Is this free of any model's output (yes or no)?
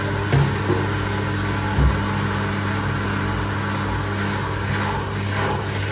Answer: yes